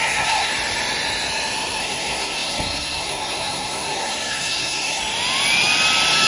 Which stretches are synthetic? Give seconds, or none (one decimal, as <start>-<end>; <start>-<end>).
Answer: 0.0-0.5; 1.8-5.0